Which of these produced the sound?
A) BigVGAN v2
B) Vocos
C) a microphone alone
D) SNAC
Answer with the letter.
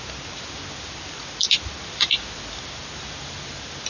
C